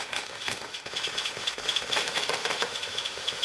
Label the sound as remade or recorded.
remade